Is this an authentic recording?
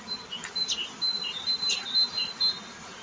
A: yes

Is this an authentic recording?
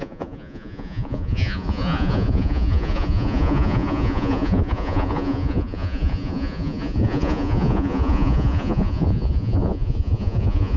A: no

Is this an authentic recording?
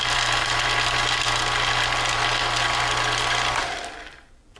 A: yes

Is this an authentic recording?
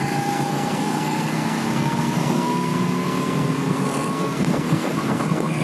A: no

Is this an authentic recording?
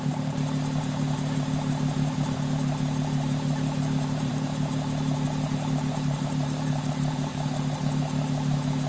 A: no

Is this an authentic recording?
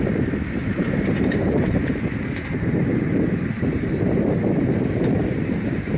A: no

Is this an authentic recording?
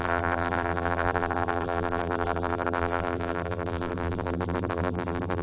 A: no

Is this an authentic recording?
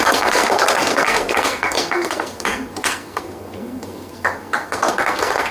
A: no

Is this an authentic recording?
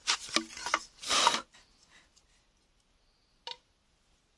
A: yes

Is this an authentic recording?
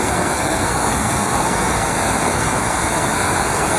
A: no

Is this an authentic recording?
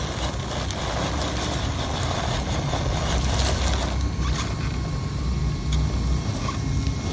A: yes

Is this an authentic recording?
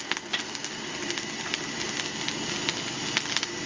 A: yes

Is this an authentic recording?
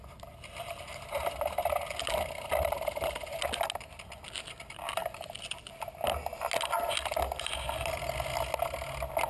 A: yes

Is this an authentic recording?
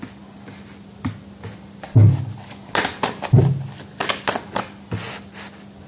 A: yes